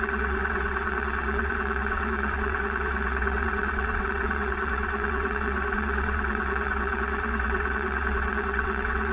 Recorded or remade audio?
remade